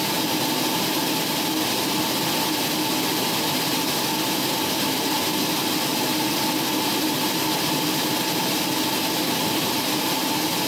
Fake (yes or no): no